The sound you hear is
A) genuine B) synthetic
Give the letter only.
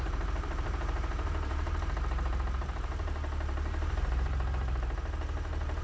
B